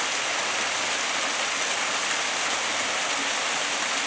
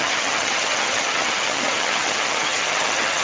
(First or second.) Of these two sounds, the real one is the first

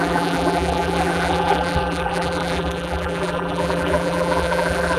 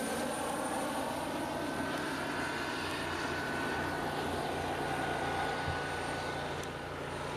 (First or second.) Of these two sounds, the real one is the second